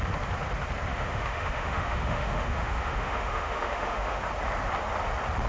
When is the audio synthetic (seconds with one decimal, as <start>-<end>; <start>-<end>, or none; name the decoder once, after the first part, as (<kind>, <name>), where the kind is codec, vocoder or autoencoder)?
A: 0.9-4.2 (autoencoder, DAC-VAE)

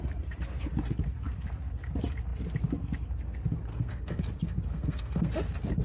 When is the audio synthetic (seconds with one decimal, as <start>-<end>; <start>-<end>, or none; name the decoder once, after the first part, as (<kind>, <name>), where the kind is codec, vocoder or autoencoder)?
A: 3.7-4.2 (codec, SNAC); 4.7-5.3

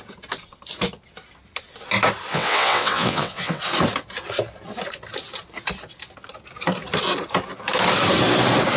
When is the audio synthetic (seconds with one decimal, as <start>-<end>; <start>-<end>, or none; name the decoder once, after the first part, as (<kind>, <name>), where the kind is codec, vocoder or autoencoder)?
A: 2.3-3.6 (vocoder, WaveNeXt)

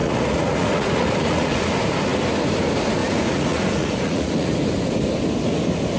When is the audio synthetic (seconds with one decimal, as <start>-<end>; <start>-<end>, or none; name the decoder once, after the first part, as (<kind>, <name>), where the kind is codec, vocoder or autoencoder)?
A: 0.0-1.7 (vocoder, Vocos); 3.0-4.5

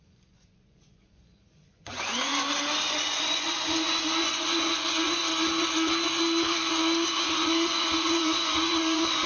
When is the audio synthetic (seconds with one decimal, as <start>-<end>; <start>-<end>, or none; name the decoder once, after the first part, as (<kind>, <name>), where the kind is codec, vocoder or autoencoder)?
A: 0.0-2.3 (vocoder, Vocos); 2.9-5.2; 7.1-9.3

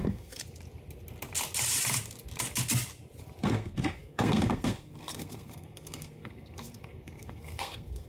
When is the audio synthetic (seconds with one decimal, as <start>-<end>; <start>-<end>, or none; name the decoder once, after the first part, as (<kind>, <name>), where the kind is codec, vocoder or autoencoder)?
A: 0.0-0.4 (codec, SNAC); 3.4-8.1

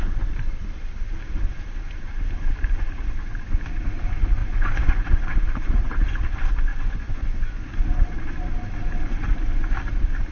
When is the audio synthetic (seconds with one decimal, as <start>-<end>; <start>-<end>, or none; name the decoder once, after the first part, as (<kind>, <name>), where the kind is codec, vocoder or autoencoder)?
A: 4.4-5.2 (vocoder, Vocos); 6.7-7.6